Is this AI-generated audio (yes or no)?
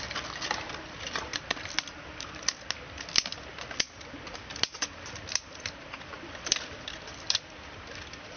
no